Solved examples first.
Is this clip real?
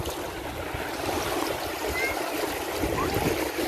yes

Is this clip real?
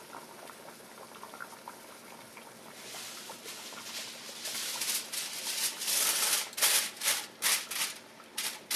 yes